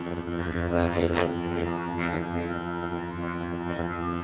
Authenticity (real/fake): fake